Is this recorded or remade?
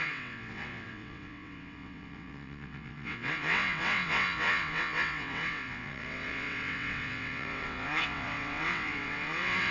remade